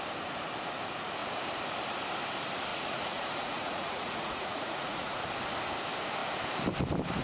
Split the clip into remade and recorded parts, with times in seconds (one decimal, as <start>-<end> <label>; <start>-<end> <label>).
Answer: 0.0-2.7 recorded; 2.7-5.2 remade; 5.2-7.2 recorded